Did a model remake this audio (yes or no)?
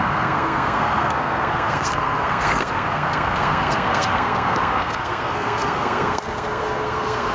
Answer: yes